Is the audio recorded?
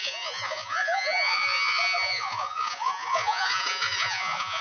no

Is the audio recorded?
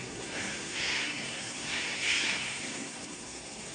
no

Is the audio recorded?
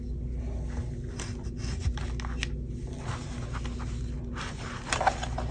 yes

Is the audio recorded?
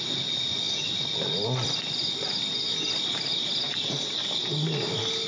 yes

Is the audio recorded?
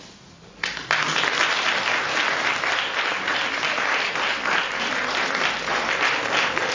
yes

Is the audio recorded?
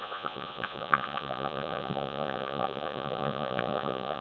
no